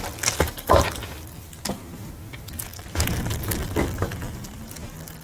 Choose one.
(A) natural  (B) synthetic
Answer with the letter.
A